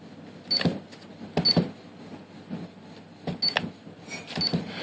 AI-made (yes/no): no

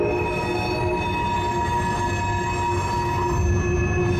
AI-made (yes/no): no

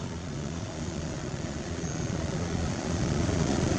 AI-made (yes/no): yes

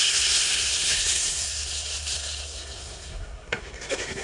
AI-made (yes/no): yes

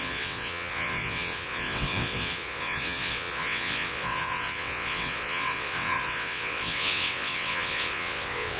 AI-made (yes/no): yes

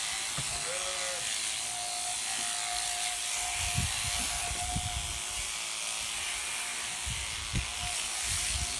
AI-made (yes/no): no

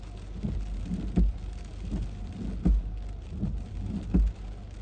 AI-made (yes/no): no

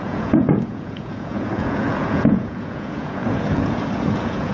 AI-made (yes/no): yes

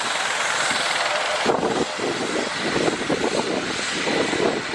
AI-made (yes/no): no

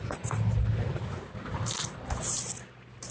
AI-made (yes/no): no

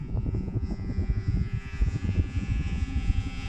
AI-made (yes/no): yes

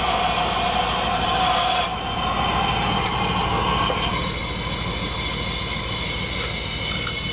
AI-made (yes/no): no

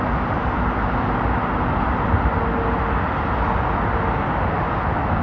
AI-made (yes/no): no